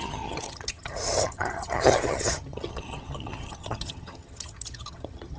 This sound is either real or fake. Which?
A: fake